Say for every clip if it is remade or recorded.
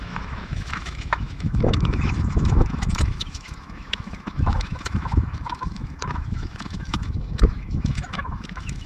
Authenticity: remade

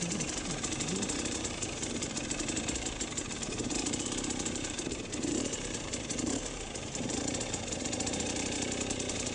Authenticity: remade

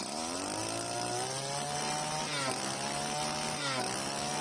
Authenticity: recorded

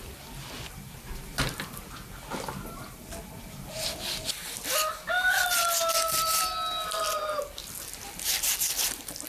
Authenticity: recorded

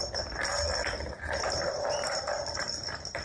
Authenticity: recorded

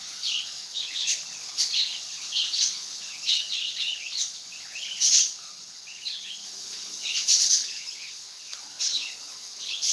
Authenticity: remade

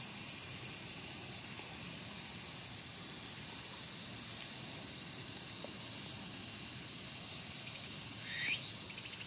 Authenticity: recorded